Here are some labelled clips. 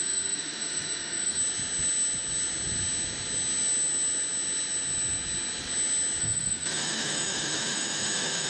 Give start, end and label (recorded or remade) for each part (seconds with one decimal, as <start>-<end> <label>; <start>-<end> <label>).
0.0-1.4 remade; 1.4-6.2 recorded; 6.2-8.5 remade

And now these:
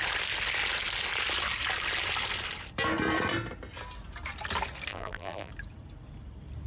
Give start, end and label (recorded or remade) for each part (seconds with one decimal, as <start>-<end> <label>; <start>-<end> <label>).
0.0-4.9 recorded; 4.9-5.5 remade; 5.5-6.7 recorded

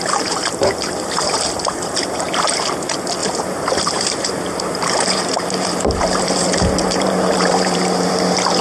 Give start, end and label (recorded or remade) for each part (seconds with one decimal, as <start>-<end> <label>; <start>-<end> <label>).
0.0-2.6 remade; 2.6-3.2 recorded; 3.2-8.1 remade; 8.1-8.6 recorded

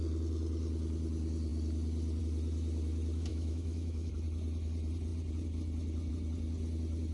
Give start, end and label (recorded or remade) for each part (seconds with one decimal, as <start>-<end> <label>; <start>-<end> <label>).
0.0-3.3 recorded; 3.3-4.1 remade; 4.1-7.1 recorded

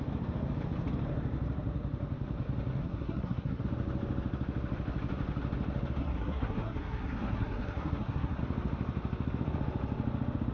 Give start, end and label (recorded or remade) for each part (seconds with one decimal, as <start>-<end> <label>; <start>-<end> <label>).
0.0-2.8 recorded; 2.8-3.6 remade; 3.6-6.0 recorded; 6.0-8.4 remade; 8.4-10.5 recorded

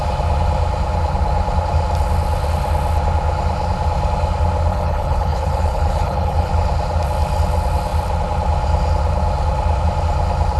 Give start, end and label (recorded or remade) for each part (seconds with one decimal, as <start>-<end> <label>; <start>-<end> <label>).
0.0-4.7 recorded; 4.7-6.5 remade; 6.5-10.6 recorded

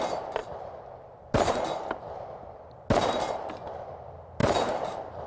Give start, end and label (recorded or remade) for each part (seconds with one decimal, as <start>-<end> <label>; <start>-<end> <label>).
0.0-5.3 recorded